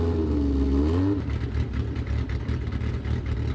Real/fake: real